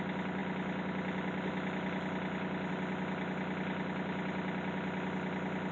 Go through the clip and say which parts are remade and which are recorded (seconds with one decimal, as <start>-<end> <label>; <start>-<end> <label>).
0.0-5.7 recorded